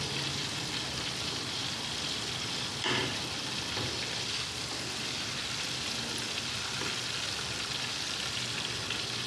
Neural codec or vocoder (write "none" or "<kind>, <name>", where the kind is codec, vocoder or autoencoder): none